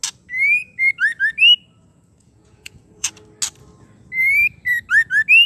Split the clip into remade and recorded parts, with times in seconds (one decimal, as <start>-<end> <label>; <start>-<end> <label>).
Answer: 0.0-1.9 recorded; 1.9-3.1 remade; 3.1-5.5 recorded

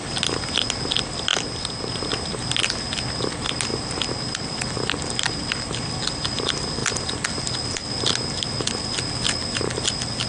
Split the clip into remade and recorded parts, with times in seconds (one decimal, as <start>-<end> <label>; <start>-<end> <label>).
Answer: 0.0-3.7 recorded; 3.7-5.7 remade; 5.7-10.3 recorded